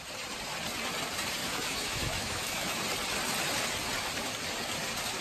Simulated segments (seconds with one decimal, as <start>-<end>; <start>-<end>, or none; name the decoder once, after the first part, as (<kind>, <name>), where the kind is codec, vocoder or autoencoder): 1.4-2.8 (autoencoder, DAC-VAE)